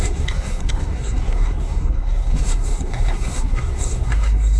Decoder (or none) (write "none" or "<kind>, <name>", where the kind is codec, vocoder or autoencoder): codec, SNAC